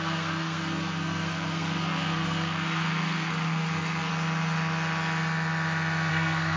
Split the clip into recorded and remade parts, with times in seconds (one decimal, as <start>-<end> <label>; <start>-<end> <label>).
0.0-4.1 remade; 4.1-6.1 recorded; 6.1-6.6 remade